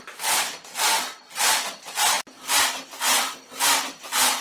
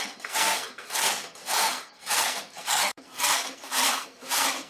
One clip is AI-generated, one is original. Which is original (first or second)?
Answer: first